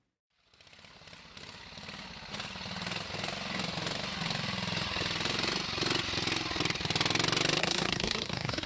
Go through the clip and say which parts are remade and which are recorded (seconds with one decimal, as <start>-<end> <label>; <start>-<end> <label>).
0.0-7.6 recorded; 7.6-8.7 remade